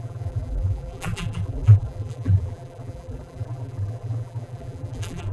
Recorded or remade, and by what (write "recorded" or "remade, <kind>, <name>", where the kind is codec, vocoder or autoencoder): remade, vocoder, BigVGAN v2